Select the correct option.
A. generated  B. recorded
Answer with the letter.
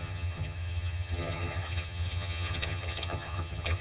A